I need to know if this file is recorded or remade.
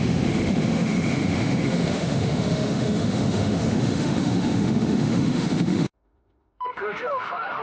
remade